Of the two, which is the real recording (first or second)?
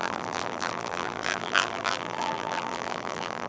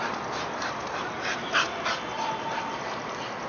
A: second